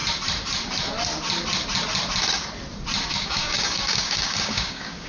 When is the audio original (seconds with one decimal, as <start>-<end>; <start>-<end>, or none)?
0.0-3.1